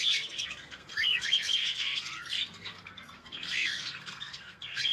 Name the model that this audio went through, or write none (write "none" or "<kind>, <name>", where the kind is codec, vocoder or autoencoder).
codec, SNAC